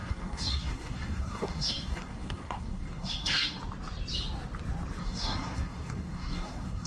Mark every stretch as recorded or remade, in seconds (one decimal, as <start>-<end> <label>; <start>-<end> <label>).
0.0-3.6 remade; 3.6-5.0 recorded; 5.0-6.9 remade